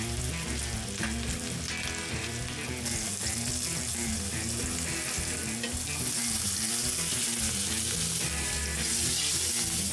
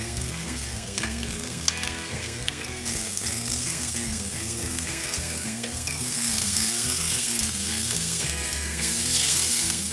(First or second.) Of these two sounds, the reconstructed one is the second